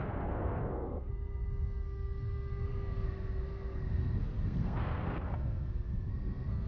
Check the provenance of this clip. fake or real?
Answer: fake